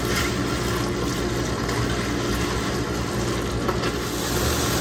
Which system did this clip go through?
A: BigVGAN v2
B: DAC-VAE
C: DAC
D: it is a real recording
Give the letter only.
D